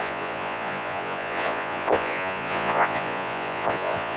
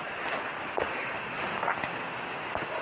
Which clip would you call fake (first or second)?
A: first